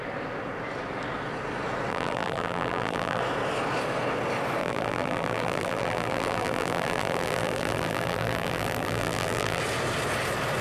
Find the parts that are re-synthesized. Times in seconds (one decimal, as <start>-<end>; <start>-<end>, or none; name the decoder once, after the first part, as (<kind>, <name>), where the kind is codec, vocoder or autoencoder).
1.9-3.2 (vocoder, BigVGAN v2); 4.6-9.6